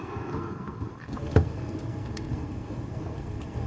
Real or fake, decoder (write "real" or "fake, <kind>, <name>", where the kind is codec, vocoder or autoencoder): fake, codec, SNAC